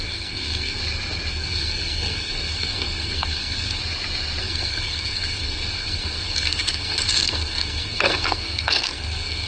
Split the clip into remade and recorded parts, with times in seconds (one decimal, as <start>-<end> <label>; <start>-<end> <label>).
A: 0.0-0.8 remade; 0.8-1.3 recorded; 1.3-3.8 remade; 3.8-4.4 recorded; 4.4-9.5 remade